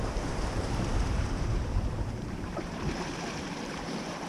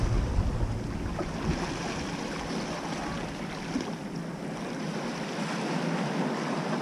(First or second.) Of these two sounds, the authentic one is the second